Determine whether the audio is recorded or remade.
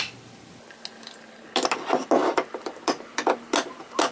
recorded